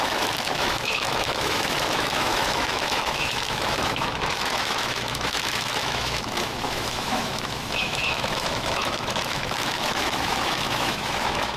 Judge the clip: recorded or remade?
remade